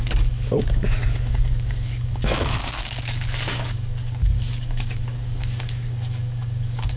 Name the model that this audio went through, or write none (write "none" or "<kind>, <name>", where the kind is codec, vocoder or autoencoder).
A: codec, DAC